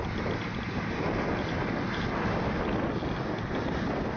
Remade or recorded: recorded